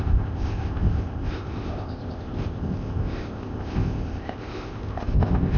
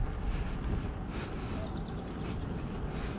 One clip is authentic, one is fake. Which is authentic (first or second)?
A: second